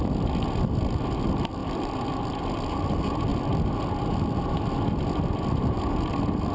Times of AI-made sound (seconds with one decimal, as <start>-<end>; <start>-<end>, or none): 1.6-2.4

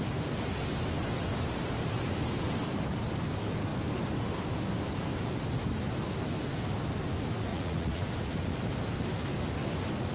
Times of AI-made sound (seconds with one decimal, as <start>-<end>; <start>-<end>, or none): 7.5-8.1

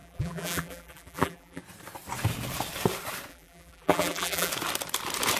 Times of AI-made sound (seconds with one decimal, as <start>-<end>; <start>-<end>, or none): 0.0-1.6; 3.3-4.5

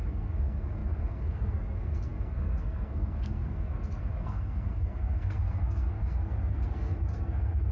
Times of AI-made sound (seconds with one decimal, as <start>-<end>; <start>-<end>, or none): 0.0-7.7

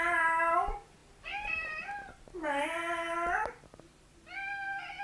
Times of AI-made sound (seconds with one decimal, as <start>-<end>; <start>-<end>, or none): none

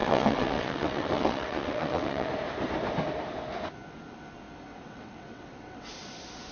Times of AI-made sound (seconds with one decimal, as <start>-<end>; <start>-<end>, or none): 0.0-2.3; 4.7-5.9